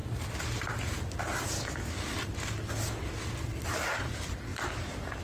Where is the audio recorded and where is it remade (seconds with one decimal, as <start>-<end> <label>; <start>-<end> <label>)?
0.0-5.2 recorded